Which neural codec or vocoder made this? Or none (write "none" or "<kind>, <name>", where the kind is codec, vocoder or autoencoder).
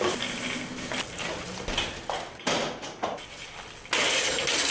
none